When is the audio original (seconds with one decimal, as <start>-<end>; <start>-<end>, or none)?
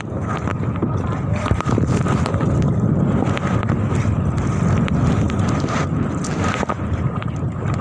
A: 0.0-7.8